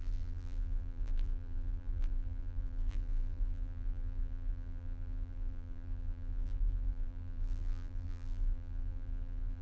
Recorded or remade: remade